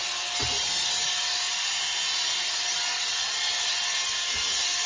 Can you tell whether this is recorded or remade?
recorded